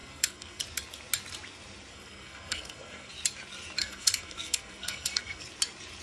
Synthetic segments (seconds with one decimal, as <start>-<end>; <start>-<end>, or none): 0.0-0.6; 1.9-3.1; 3.8-5.4